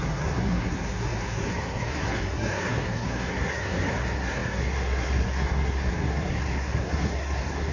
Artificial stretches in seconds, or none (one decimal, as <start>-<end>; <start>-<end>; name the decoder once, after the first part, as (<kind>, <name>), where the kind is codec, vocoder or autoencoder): 0.0-7.7 (codec, SNAC)